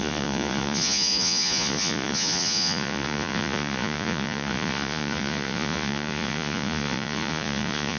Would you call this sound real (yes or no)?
no